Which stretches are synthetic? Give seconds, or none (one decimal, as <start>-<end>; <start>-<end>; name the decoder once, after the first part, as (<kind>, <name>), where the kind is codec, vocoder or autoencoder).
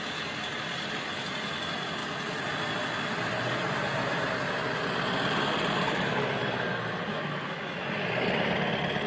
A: 7.1-7.6 (autoencoder, DAC-VAE)